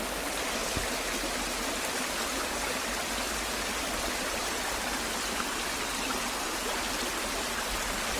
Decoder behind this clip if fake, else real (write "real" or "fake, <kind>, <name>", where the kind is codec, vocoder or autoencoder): real